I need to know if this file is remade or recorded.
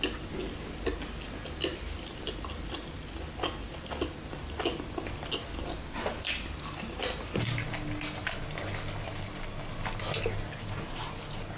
recorded